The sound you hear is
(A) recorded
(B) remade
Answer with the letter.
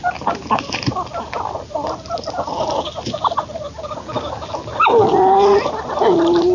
A